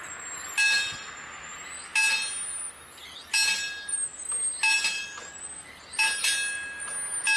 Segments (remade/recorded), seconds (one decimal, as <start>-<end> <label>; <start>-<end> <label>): 0.0-7.4 recorded